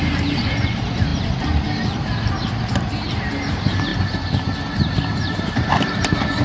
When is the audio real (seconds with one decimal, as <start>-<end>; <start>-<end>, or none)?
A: 1.1-3.5; 3.9-5.2